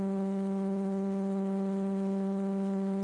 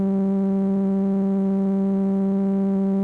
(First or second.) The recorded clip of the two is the second